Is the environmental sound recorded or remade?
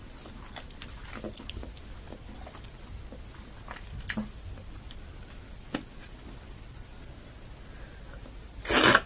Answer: recorded